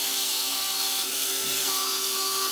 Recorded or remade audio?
remade